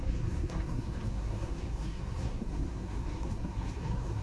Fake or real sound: fake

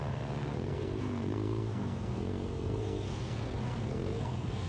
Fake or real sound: fake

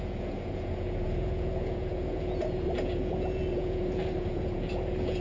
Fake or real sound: fake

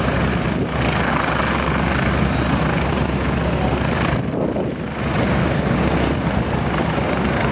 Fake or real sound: real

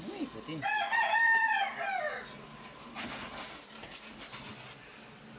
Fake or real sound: real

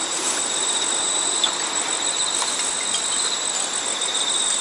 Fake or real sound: real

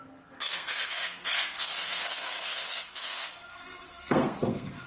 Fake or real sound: fake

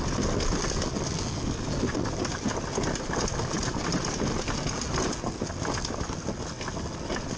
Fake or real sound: real